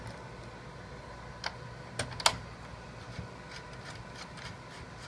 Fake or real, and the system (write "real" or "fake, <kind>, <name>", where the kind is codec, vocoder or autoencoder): real